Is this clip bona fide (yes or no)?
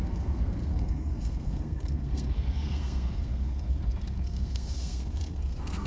no